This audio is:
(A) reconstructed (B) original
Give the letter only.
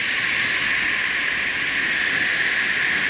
B